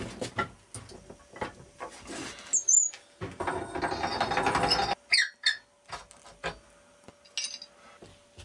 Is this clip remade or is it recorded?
recorded